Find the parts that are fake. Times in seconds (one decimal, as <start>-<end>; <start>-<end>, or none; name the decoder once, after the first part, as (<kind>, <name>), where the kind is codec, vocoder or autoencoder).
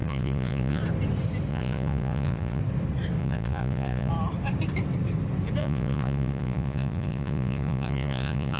0.0-0.8 (vocoder, Vocos); 1.5-2.6; 3.2-4.1; 5.6-8.6